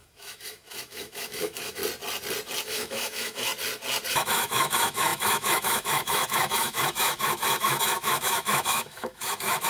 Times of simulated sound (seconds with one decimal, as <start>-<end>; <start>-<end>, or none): 0.0-1.8; 2.6-3.5; 4.1-9.7